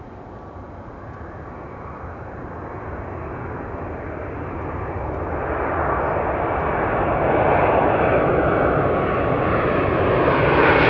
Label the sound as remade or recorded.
recorded